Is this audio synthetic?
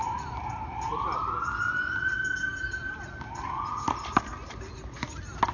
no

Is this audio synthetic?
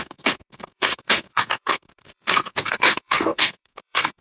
yes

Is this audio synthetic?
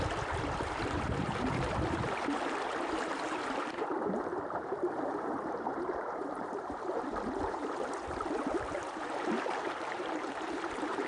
yes